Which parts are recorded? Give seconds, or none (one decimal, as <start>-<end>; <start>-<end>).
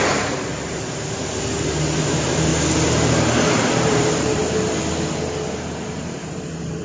0.0-0.7; 2.5-3.5; 4.4-6.0